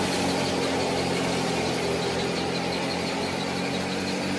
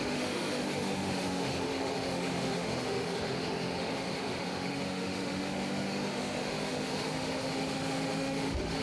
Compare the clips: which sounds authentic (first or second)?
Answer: first